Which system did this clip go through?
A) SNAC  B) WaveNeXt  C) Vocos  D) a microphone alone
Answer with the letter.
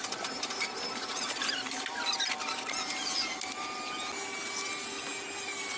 D